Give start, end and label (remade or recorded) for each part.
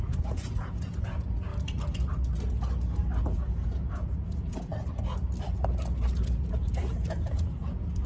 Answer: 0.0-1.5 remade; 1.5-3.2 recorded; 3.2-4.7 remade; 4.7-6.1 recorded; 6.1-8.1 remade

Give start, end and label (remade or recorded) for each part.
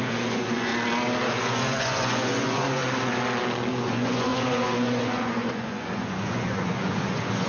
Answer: 0.0-0.7 remade; 0.7-1.3 recorded; 1.3-2.8 remade; 2.8-3.8 recorded; 3.8-7.5 remade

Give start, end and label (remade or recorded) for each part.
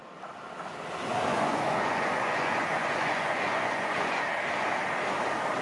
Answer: 0.0-1.3 recorded; 1.3-4.2 remade; 4.2-5.6 recorded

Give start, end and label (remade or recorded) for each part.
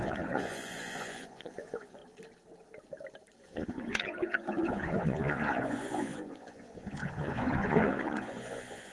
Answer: 0.0-2.0 remade; 2.0-3.4 recorded; 3.4-8.9 remade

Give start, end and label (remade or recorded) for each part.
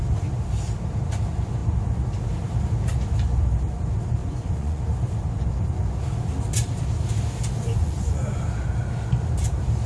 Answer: 0.0-4.2 recorded; 4.2-4.8 remade; 4.8-7.8 recorded; 7.8-8.4 remade; 8.4-9.9 recorded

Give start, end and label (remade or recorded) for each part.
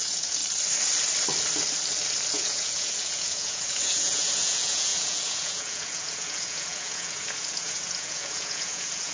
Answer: 0.0-0.4 remade; 0.4-2.3 recorded; 2.3-9.1 remade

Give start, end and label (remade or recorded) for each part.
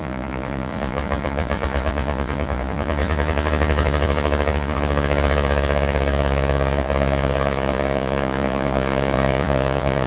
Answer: 0.0-10.1 remade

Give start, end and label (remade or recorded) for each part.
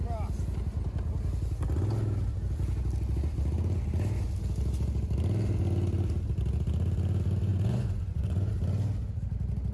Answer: 0.0-7.5 recorded; 7.5-8.5 remade; 8.5-9.7 recorded